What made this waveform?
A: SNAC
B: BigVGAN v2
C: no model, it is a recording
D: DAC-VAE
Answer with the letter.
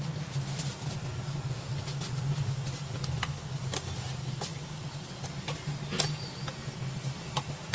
C